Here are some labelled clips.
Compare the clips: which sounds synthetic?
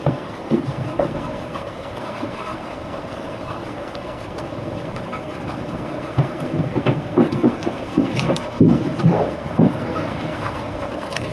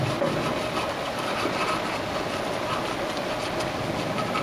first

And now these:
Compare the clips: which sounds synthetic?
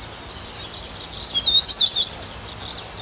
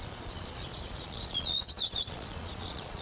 second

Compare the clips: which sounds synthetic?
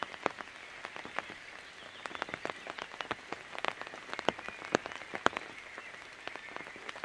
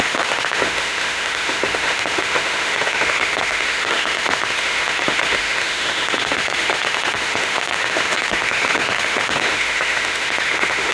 second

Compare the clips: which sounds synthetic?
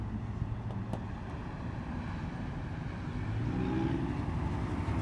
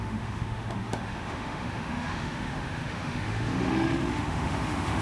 second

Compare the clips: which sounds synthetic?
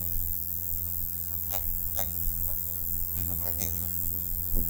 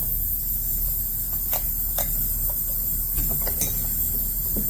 first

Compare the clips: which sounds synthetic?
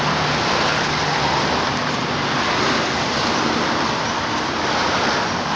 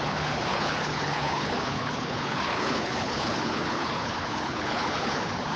second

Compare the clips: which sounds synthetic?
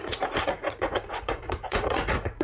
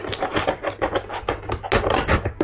first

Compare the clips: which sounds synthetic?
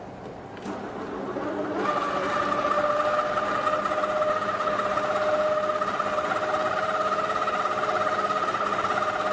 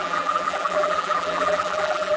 second